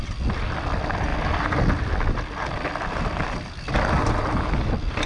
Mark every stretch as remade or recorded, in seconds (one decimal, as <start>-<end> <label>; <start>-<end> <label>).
0.0-5.1 recorded